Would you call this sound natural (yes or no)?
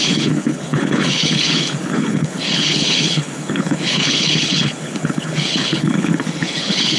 no